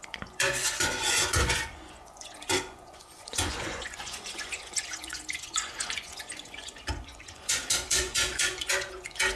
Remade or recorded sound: remade